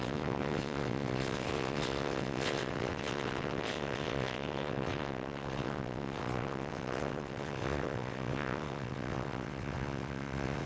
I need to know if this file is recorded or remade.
remade